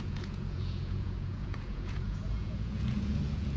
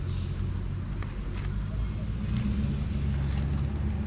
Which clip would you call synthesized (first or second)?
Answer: first